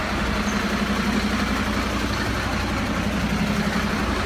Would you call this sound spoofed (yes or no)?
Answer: no